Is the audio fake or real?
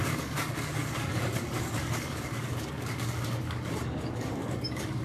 fake